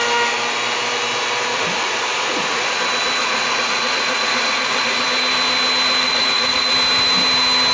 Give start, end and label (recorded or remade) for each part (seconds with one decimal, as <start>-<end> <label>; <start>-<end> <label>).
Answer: 0.0-1.5 recorded; 1.5-2.8 remade; 2.8-3.2 recorded; 3.2-5.0 remade; 5.0-6.0 recorded; 6.0-6.7 remade; 6.7-7.7 recorded